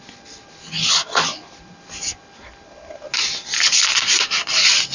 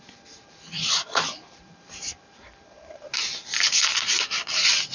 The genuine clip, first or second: first